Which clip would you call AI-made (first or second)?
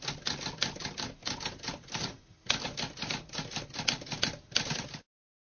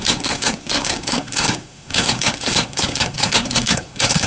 second